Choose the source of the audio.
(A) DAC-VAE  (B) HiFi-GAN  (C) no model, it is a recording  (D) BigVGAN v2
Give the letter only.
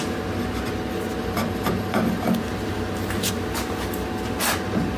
C